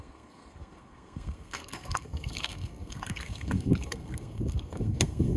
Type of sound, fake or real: fake